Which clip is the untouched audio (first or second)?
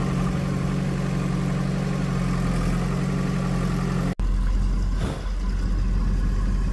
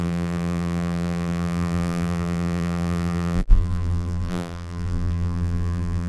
first